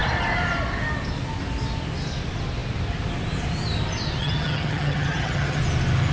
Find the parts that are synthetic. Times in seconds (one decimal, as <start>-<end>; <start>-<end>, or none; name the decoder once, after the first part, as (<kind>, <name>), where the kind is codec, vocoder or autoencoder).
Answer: 4.2-5.6 (vocoder, HiFi-GAN)